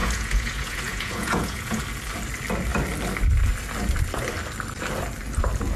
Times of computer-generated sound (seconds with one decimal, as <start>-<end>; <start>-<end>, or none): 0.0-1.8